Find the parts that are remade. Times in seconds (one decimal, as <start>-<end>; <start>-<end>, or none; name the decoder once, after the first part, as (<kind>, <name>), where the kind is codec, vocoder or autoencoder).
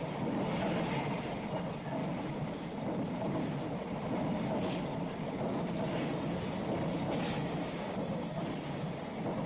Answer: none